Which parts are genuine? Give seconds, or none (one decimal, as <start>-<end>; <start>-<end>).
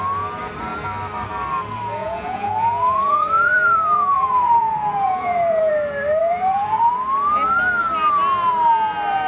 0.0-2.0; 5.7-6.2; 6.9-9.3